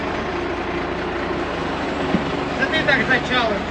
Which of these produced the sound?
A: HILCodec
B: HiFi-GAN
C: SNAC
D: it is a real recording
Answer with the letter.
D